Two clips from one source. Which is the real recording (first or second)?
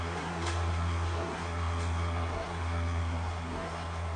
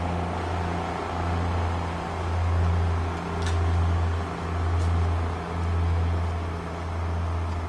second